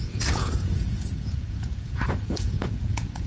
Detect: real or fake fake